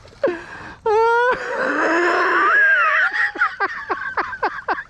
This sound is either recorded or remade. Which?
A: recorded